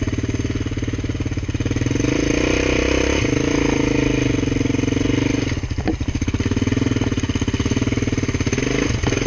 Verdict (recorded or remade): recorded